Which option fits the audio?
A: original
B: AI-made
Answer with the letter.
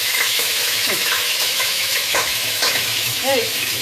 B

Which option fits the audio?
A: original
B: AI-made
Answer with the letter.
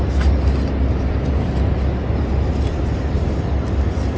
A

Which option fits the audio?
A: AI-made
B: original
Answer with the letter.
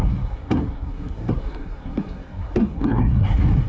A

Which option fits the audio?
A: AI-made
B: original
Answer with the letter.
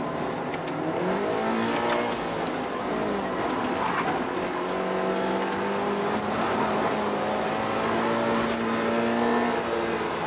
B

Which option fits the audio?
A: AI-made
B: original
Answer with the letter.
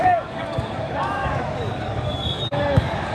A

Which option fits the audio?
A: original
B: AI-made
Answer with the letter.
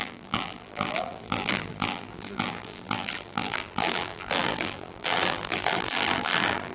B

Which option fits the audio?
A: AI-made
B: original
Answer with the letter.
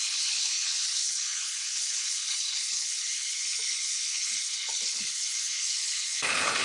A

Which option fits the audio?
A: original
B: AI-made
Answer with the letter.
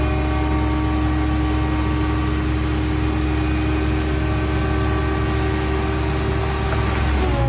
A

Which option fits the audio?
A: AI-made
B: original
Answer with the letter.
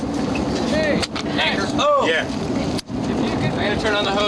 B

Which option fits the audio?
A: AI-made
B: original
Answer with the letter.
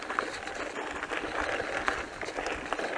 B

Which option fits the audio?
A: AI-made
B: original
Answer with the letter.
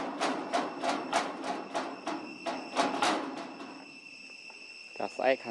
B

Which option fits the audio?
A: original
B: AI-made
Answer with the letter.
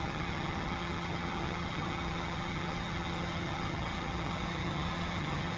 B